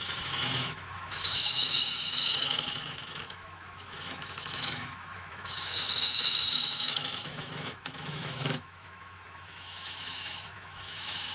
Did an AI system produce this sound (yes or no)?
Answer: yes